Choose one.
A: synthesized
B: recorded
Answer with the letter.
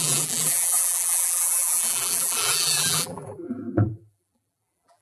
A